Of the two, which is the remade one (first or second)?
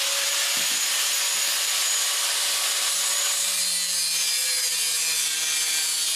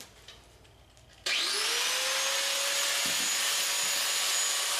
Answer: first